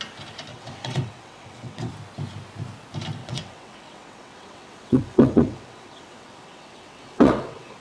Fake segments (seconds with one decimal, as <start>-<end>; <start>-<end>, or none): 0.5-1.9; 3.2-7.8